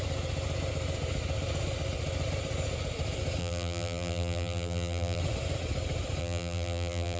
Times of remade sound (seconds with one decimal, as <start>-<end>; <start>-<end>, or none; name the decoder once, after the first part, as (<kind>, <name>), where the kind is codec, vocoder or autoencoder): 3.4-5.2 (vocoder, BigVGAN v2); 6.2-7.2